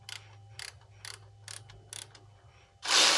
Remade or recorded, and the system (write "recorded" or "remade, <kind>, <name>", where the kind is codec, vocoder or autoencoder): recorded